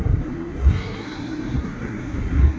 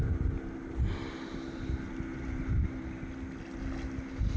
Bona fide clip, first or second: second